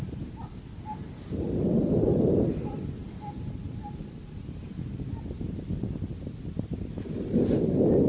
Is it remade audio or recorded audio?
recorded